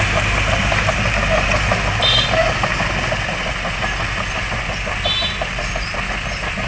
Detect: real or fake real